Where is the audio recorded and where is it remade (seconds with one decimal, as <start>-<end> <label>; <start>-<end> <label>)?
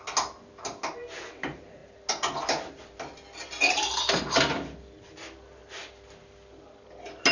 0.0-7.3 recorded